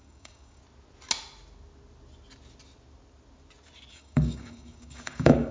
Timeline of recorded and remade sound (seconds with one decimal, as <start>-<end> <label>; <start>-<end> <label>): 0.0-0.6 remade; 0.6-3.9 recorded; 3.9-5.5 remade